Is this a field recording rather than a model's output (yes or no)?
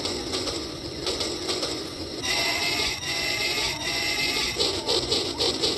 no